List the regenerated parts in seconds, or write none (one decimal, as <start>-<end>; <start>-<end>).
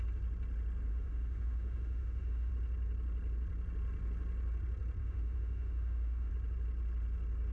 0.9-2.5; 5.0-6.3